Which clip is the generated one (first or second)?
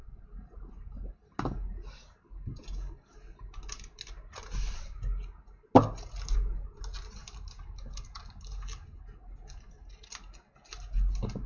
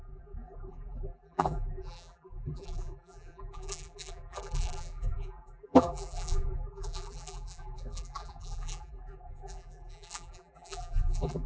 second